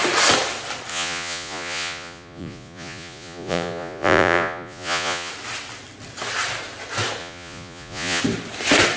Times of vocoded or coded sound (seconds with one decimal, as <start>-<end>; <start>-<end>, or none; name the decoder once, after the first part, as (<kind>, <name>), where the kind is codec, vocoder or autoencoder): 0.9-5.3 (vocoder, Vocos); 7.2-8.2